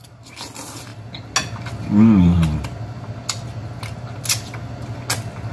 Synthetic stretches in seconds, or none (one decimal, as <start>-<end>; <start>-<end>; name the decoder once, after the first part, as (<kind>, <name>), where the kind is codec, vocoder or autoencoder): none